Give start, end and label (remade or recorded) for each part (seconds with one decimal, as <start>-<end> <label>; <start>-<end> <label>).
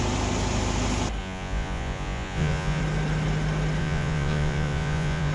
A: 0.0-1.2 recorded; 1.2-2.8 remade; 2.8-3.8 recorded; 3.8-5.3 remade